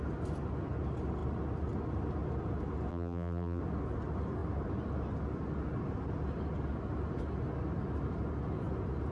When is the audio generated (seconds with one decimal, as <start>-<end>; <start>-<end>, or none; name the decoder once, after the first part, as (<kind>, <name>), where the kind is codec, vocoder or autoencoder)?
2.9-3.6 (vocoder, BigVGAN v2)